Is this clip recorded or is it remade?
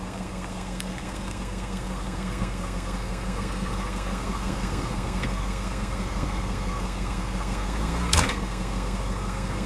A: remade